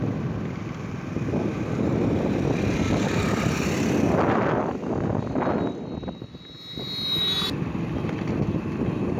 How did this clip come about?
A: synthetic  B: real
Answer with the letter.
B